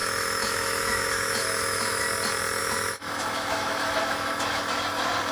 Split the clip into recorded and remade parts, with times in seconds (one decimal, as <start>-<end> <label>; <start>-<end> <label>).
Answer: 0.0-2.0 remade; 2.0-2.6 recorded; 2.6-4.6 remade; 4.6-5.3 recorded